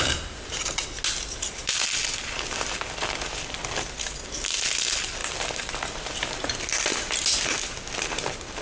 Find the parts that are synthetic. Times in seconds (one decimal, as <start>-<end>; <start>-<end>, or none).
none